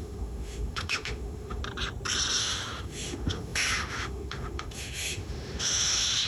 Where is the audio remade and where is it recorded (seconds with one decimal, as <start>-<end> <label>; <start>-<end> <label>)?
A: 0.0-1.6 remade; 1.6-2.4 recorded; 2.4-6.3 remade